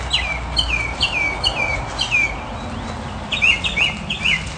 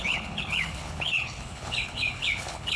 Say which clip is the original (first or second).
first